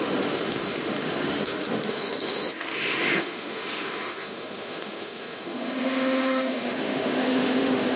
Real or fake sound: fake